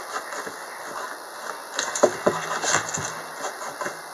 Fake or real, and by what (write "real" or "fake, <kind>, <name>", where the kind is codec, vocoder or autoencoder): real